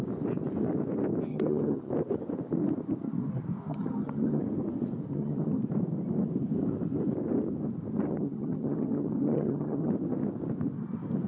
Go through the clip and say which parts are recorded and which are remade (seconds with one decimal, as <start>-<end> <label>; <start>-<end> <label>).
0.0-1.3 recorded; 1.3-1.9 remade; 1.9-3.7 recorded; 3.7-4.4 remade; 4.4-5.1 recorded; 5.1-5.6 remade; 5.6-8.1 recorded; 8.1-9.9 remade; 9.9-11.3 recorded